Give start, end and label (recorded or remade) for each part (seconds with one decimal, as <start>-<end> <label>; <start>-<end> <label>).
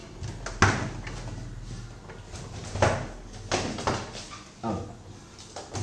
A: 0.0-5.8 recorded